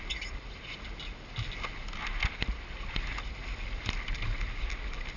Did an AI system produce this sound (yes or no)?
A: no